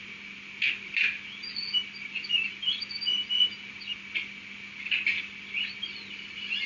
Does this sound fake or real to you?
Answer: real